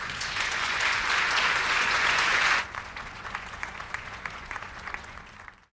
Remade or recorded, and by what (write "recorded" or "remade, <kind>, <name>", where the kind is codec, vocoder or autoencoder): remade, vocoder, Vocos